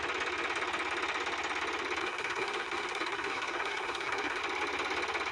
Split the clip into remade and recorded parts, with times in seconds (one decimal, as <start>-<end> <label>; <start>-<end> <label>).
0.0-2.0 recorded; 2.0-4.4 remade; 4.4-5.3 recorded